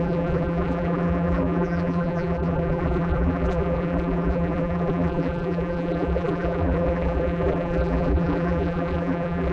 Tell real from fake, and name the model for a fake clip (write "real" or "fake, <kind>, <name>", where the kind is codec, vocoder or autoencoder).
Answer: fake, vocoder, BigVGAN v2